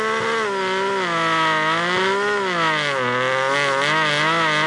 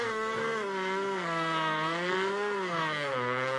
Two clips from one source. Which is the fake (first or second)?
second